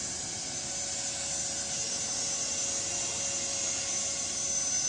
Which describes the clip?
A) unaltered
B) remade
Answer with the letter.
A